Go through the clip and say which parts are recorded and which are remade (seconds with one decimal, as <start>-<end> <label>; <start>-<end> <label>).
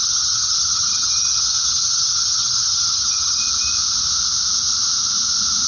0.0-3.4 remade; 3.4-5.7 recorded